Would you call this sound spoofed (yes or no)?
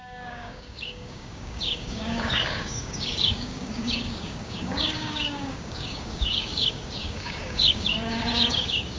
yes